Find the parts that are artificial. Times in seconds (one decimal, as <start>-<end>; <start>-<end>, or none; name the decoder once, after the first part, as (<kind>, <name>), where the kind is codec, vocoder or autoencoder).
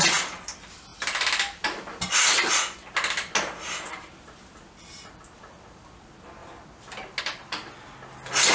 none